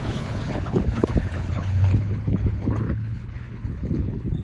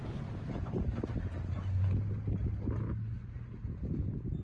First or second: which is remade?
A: first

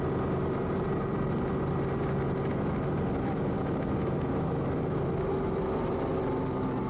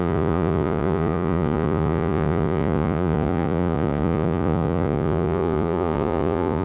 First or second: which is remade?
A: second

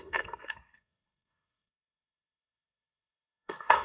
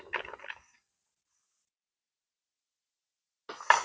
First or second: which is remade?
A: first